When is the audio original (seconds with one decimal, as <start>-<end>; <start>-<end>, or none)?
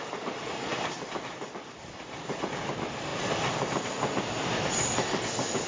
0.0-5.7